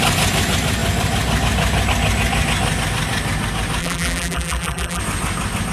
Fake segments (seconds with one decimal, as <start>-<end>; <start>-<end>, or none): 3.8-5.0